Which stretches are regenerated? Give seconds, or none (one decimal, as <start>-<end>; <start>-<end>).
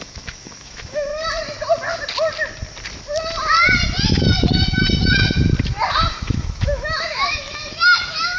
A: 0.0-1.1; 6.1-8.4